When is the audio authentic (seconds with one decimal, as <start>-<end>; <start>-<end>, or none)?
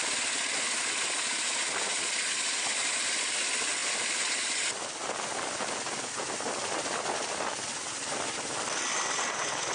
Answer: 0.0-9.7